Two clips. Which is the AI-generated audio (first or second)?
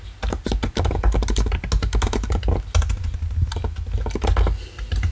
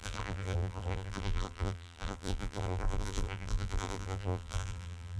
second